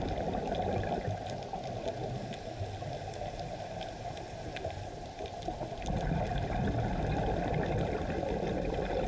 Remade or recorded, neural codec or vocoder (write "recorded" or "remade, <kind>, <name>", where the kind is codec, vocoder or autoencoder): recorded